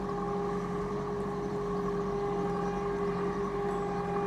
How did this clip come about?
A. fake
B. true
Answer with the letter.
B